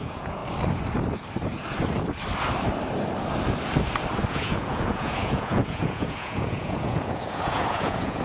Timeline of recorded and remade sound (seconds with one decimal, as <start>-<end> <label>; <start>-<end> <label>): 0.0-0.4 remade; 0.4-4.3 recorded; 4.3-8.2 remade